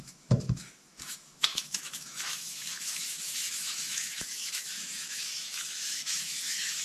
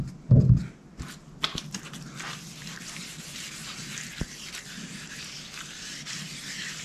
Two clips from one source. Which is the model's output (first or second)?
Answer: first